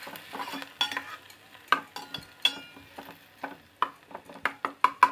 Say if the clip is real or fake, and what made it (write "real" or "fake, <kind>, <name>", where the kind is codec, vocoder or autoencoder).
real